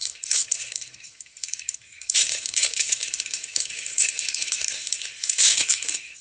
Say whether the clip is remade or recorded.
remade